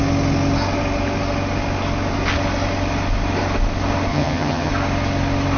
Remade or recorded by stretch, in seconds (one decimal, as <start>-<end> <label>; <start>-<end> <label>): 0.0-4.1 recorded; 4.1-4.7 remade; 4.7-5.6 recorded